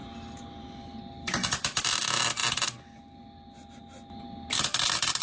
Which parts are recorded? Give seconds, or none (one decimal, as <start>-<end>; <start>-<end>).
0.0-5.2